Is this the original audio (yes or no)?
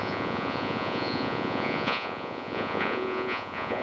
no